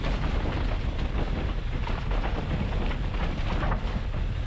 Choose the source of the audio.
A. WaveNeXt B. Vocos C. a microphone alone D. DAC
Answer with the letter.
C